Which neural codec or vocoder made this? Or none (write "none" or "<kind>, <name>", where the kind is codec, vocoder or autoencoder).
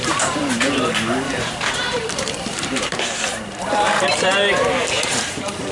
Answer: vocoder, BigVGAN v2